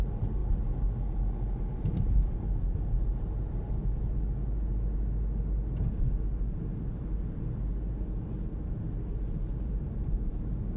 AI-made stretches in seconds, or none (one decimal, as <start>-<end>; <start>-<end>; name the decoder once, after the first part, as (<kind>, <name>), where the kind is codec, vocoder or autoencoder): 9.4-10.3 (vocoder, BigVGAN v2)

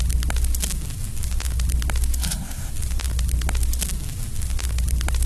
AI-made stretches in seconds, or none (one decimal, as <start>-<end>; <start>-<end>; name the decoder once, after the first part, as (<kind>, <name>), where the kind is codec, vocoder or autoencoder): 2.2-2.7 (codec, SNAC)

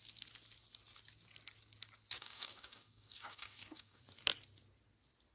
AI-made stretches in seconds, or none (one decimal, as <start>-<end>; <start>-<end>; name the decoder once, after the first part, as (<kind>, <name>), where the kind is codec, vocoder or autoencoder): 2.2-4.0 (codec, DAC)